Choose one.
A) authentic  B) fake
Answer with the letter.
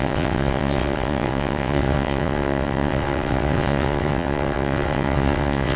B